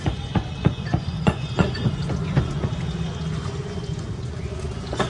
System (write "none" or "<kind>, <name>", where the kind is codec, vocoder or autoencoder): vocoder, Vocos